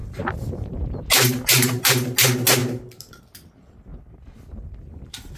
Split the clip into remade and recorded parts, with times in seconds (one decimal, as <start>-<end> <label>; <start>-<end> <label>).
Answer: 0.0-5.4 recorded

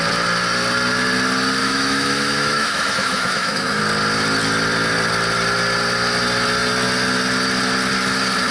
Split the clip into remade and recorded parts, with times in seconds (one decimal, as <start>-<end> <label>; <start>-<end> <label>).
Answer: 0.0-1.6 recorded; 1.6-3.8 remade; 3.8-8.5 recorded

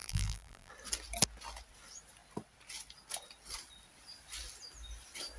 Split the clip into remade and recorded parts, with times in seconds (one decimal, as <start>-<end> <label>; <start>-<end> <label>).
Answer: 0.0-0.7 remade; 0.7-5.4 recorded

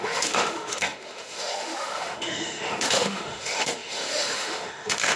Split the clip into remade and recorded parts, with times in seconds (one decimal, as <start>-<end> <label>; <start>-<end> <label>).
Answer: 0.0-5.2 remade

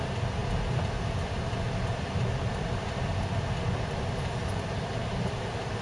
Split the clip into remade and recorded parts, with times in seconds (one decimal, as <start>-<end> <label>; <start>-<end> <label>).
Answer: 0.0-5.8 recorded

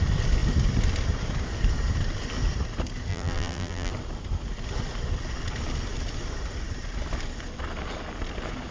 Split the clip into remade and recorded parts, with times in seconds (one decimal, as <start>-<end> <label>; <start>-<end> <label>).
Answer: 0.0-3.1 recorded; 3.1-3.9 remade; 3.9-8.7 recorded